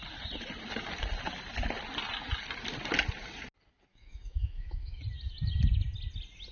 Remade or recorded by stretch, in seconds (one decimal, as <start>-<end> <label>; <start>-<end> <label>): 0.0-3.9 recorded; 3.9-5.0 remade; 5.0-6.5 recorded